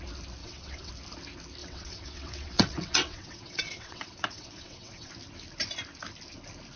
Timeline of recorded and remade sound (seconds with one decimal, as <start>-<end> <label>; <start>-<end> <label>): 0.0-0.4 recorded; 0.4-0.9 remade; 0.9-1.6 recorded; 1.6-5.1 remade; 5.1-6.8 recorded